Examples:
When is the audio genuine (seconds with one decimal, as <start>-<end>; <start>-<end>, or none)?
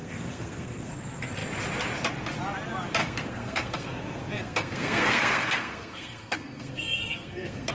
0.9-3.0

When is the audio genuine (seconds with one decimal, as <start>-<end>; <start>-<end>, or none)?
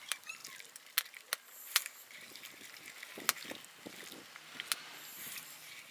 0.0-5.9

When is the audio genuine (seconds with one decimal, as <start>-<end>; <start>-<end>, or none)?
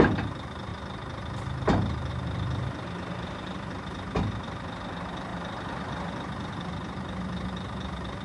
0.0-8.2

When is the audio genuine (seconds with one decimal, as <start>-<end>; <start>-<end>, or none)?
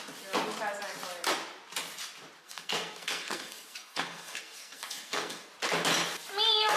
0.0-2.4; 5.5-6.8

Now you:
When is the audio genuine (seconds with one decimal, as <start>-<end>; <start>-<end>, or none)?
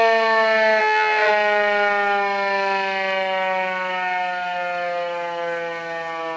0.0-0.8; 1.3-6.4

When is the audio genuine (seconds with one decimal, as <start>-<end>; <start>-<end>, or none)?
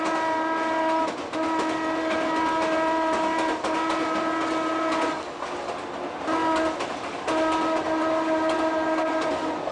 0.0-9.7